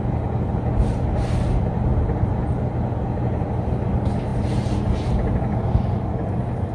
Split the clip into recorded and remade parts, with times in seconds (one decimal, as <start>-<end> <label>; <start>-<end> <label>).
0.0-6.7 recorded